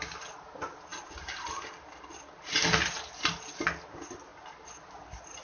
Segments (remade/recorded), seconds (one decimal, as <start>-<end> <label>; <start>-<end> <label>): 0.0-5.4 recorded